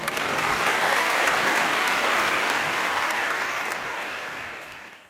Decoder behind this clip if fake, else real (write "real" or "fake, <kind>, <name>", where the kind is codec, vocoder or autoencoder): fake, codec, DAC